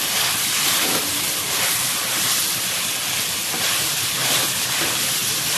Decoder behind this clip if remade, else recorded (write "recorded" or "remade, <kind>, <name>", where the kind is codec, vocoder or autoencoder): recorded